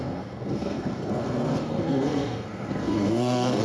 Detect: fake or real fake